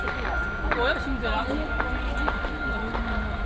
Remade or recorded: recorded